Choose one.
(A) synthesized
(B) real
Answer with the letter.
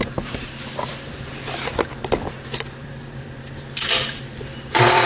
A